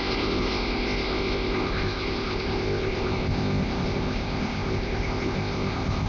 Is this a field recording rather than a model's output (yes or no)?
no